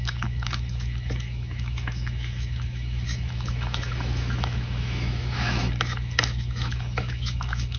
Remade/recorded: remade